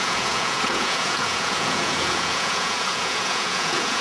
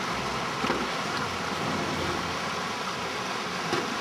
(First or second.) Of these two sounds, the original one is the second